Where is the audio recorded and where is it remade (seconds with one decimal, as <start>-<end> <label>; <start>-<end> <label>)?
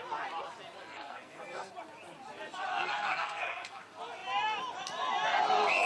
0.0-0.8 recorded; 0.8-1.7 remade; 1.7-2.7 recorded; 2.7-3.8 remade; 3.8-5.9 recorded